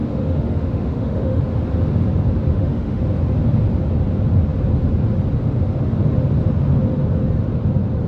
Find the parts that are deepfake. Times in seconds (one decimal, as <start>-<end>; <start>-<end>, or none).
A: 0.0-1.4; 2.5-3.0